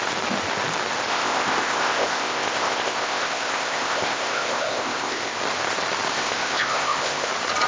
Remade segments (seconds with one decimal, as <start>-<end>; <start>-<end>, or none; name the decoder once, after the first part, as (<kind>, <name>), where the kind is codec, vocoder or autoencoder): 1.1-5.4 (codec, ZipCodec); 6.1-7.3